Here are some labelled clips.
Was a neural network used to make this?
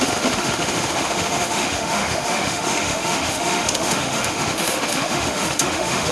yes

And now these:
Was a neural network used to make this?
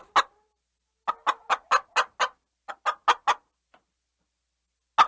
no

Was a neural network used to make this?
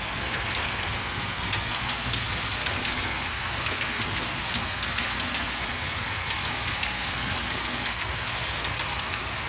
yes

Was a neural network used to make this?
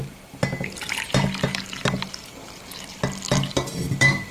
no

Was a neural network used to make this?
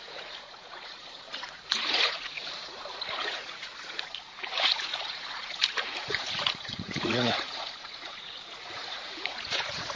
yes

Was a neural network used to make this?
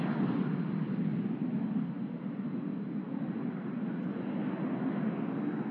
no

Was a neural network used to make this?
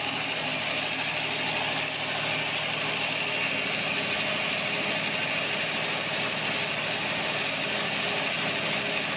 no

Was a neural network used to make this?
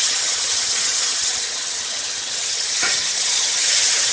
yes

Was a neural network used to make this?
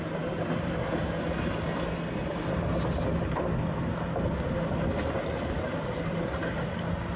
no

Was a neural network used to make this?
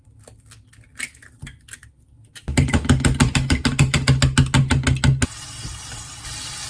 no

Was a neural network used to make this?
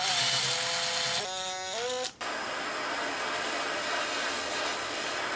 no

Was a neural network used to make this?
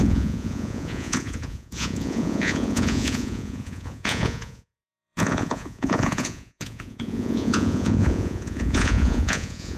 yes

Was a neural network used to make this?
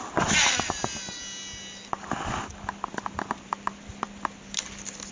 no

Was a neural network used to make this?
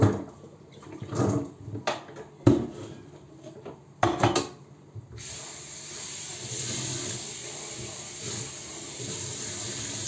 no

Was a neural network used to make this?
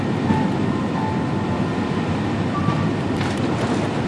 no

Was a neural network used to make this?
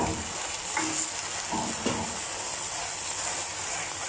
no